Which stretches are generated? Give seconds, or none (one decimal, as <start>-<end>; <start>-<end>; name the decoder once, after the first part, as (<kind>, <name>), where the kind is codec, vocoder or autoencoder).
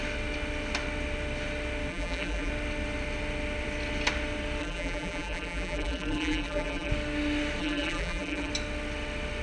1.9-2.5 (vocoder, BigVGAN v2); 4.6-6.9; 7.6-8.5